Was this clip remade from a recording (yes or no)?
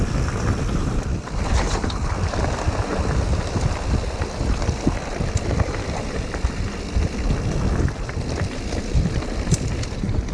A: no